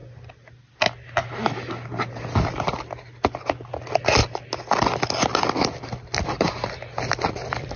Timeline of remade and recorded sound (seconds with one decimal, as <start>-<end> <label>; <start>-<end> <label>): 0.0-7.8 recorded